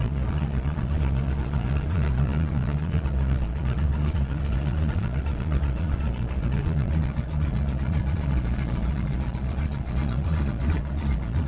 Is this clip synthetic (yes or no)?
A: yes